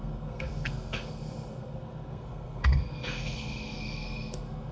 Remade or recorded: remade